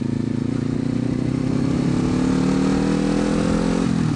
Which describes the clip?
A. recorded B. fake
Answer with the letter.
A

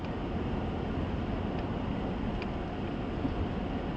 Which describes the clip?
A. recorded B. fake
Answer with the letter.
A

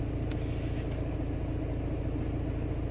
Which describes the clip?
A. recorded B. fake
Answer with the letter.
A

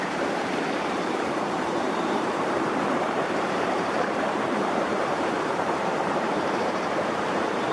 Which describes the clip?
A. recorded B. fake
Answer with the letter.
B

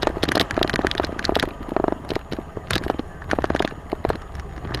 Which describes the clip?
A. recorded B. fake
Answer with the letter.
A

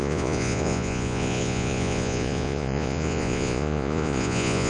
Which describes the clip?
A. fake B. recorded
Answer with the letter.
A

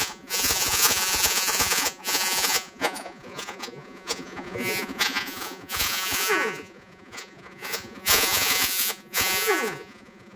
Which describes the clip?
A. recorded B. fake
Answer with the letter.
B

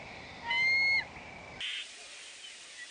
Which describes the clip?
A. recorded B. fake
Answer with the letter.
A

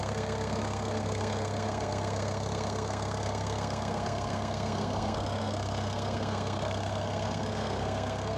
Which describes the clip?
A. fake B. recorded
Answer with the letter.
A